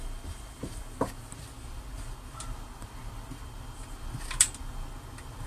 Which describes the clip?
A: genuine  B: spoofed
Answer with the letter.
A